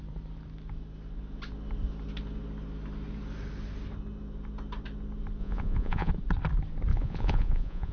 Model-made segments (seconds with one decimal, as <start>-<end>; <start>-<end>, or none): 5.4-6.1; 6.9-7.9